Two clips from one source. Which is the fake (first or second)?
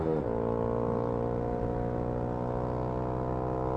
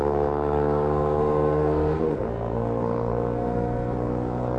second